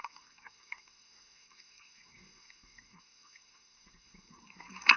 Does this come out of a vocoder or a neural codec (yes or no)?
yes